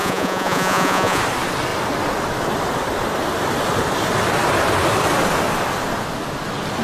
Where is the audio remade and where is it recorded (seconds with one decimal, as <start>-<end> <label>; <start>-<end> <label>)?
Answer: 0.0-1.2 remade; 1.2-6.8 recorded